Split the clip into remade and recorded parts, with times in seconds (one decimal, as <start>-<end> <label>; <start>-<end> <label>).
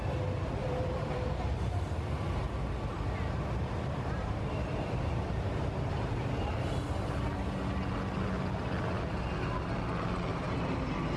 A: 0.0-0.6 recorded; 0.6-1.4 remade; 1.4-3.6 recorded; 3.6-6.5 remade; 6.5-10.3 recorded; 10.3-11.2 remade